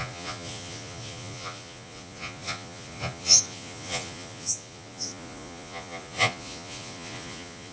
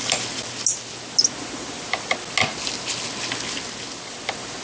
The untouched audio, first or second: second